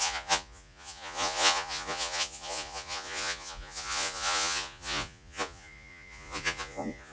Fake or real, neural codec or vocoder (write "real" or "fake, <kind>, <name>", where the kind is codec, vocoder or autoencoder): fake, vocoder, Vocos